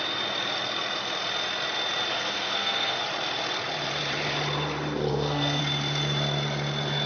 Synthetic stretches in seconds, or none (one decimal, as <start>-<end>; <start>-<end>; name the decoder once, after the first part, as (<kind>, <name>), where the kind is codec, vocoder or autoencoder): 2.1-3.0 (codec, SNAC); 5.1-5.6